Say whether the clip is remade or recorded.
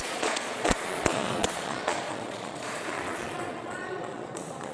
remade